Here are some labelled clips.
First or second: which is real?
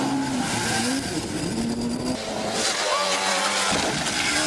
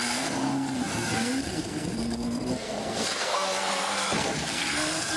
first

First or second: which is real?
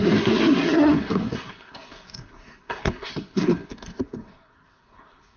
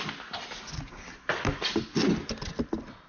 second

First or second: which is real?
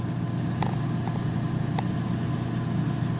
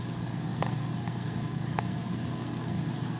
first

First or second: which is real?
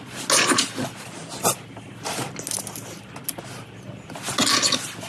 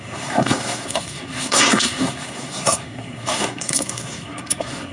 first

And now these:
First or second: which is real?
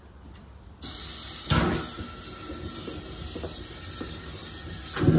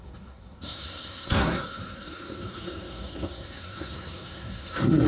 first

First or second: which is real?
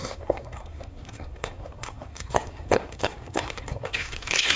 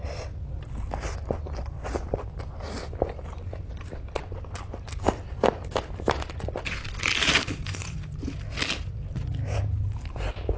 second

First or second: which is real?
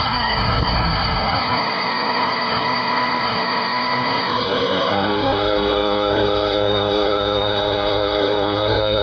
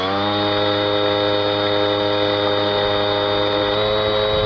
second